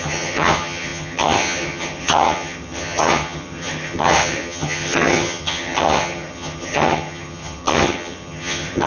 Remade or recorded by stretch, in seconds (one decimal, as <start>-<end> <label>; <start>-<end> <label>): 0.0-8.9 remade